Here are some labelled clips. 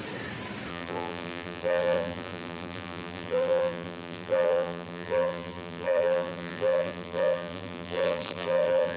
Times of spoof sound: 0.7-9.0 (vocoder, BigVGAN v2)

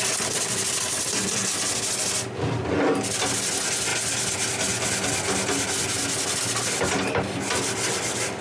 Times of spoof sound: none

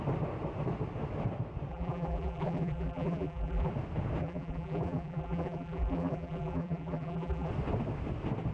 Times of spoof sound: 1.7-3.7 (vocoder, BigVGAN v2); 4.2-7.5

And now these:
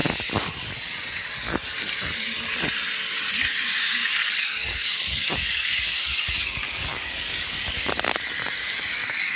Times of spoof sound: 4.2-7.9 (codec, DAC); 8.6-9.4

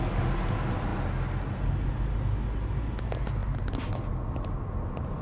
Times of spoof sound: none